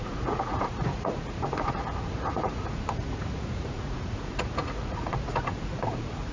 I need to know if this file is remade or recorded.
remade